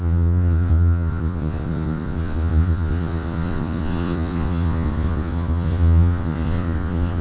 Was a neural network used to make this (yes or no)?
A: yes